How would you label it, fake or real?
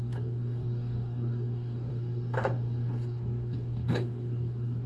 fake